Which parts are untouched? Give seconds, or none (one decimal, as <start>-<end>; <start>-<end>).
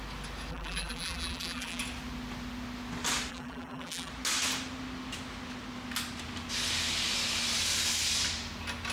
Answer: 0.0-0.5; 1.8-3.3; 4.1-8.9